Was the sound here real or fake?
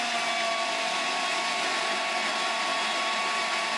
real